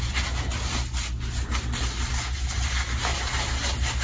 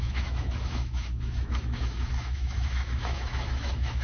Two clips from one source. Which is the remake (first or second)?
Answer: second